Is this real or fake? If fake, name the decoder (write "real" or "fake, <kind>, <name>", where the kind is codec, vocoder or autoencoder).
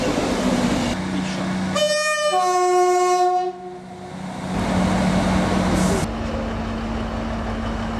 real